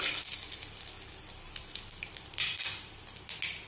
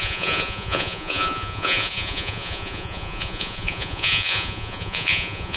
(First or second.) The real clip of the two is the first